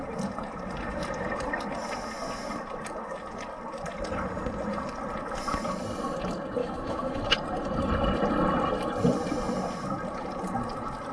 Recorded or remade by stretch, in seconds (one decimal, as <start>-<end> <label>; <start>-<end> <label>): 0.0-6.6 recorded; 6.6-7.2 remade; 7.2-11.1 recorded

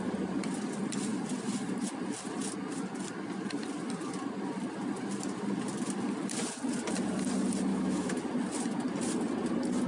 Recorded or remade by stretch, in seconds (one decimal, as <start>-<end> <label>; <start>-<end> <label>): 0.0-7.7 recorded; 7.7-8.2 remade; 8.2-9.9 recorded

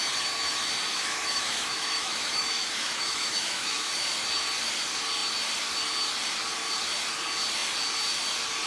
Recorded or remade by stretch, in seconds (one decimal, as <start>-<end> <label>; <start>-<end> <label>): 0.0-0.9 recorded; 0.9-3.9 remade; 3.9-8.7 recorded

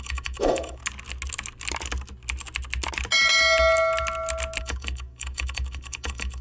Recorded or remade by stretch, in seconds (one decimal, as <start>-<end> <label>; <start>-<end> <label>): 0.0-0.8 remade; 0.8-4.6 recorded; 4.6-6.4 remade

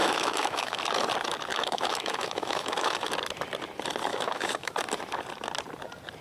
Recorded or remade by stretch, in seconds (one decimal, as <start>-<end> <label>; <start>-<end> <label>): 0.0-0.8 remade; 0.8-1.5 recorded; 1.5-3.1 remade; 3.1-4.1 recorded; 4.1-4.7 remade; 4.7-6.2 recorded

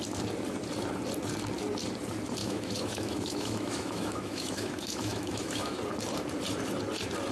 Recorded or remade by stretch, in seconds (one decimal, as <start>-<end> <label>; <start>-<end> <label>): 0.0-2.4 recorded; 2.4-5.8 remade; 5.8-7.3 recorded

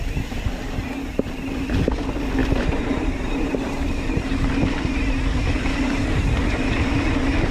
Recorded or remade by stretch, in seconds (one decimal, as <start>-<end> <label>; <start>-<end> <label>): 0.0-7.5 recorded

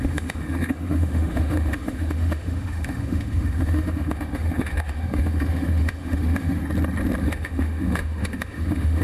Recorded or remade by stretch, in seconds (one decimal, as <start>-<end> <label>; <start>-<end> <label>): 0.0-6.6 remade; 6.6-7.2 recorded; 7.2-9.0 remade